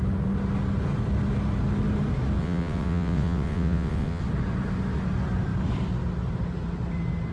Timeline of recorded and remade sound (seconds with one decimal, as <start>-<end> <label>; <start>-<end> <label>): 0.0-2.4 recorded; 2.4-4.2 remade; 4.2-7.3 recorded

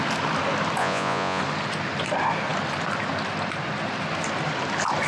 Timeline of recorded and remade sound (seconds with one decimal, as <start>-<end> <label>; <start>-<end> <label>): 0.0-0.8 recorded; 0.8-1.4 remade; 1.4-5.1 recorded

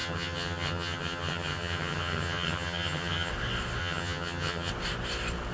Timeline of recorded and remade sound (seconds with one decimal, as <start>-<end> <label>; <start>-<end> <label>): 0.0-3.3 remade; 3.3-3.8 recorded; 3.8-4.7 remade; 4.7-5.5 recorded

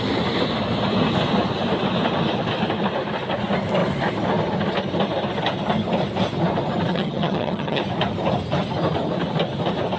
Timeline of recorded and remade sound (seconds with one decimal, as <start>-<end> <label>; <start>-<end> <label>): 0.0-6.9 recorded; 6.9-7.8 remade; 7.8-10.0 recorded